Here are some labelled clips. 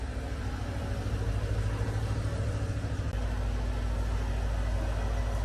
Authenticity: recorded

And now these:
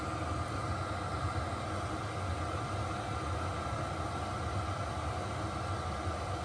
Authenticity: recorded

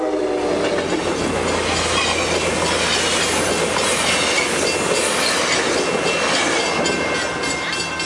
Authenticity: recorded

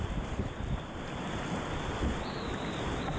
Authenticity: recorded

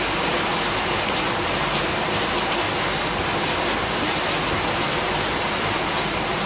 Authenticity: recorded